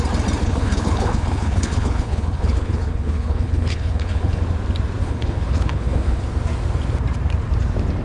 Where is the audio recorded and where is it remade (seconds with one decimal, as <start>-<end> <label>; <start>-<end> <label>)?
0.0-0.4 recorded; 0.4-4.4 remade; 4.4-5.0 recorded; 5.0-6.2 remade; 6.2-8.0 recorded